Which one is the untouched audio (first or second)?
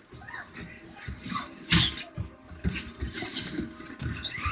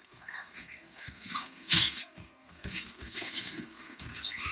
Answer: first